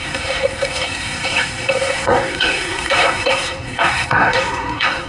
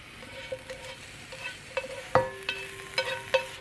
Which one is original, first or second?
second